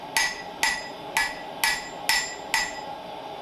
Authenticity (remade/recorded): recorded